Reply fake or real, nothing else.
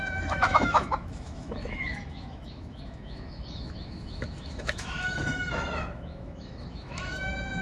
fake